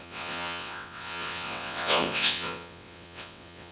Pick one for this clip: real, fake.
fake